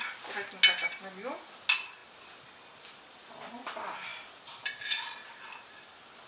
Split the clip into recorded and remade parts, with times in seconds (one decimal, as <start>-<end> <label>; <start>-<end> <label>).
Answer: 0.0-6.3 recorded

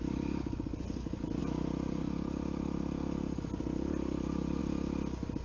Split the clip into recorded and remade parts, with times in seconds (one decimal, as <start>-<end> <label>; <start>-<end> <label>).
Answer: 0.0-5.4 recorded

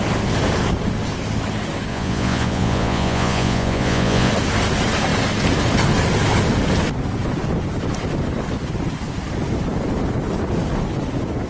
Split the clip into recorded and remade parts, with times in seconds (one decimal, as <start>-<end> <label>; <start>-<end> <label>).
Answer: 0.0-1.9 recorded; 1.9-4.3 remade; 4.3-11.5 recorded

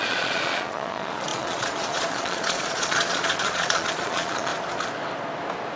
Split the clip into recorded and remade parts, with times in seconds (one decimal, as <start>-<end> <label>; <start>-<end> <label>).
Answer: 0.0-4.5 remade; 4.5-5.8 recorded

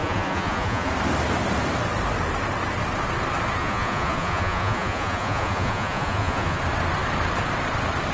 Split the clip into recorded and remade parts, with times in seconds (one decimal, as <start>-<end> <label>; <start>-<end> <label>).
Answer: 0.0-0.9 remade; 0.9-3.6 recorded; 3.6-6.6 remade; 6.6-8.1 recorded

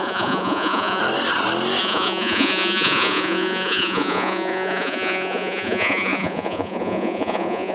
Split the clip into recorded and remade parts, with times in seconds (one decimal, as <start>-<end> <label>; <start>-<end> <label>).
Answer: 0.0-1.0 remade; 1.0-1.8 recorded; 1.8-7.7 remade